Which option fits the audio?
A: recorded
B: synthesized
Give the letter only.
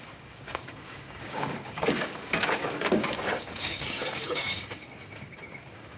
B